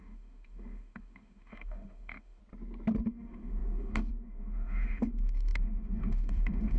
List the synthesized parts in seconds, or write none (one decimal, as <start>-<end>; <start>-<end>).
0.0-2.4; 3.1-6.8